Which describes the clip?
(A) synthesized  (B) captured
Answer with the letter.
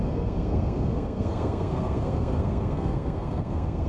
A